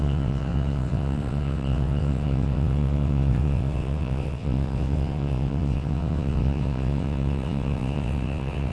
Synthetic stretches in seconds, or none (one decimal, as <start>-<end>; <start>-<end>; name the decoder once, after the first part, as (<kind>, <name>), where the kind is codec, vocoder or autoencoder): 0.0-8.7 (vocoder, WaveNeXt)